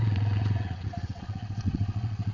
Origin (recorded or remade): remade